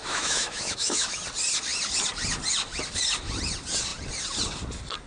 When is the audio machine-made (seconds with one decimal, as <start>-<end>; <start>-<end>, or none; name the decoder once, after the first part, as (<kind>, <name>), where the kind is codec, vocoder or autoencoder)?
0.0-1.2 (autoencoder, DAC-VAE)